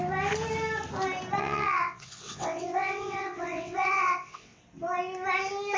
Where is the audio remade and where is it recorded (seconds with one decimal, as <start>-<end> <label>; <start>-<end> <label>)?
0.0-1.4 recorded; 1.4-4.6 remade; 4.6-5.8 recorded